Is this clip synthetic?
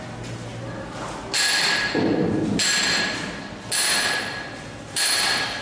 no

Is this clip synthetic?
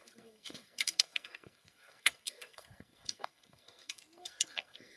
yes